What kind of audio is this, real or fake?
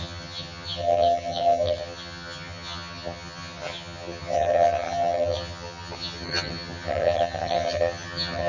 fake